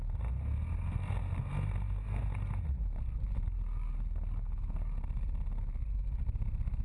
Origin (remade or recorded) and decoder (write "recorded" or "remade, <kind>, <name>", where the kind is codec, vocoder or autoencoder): recorded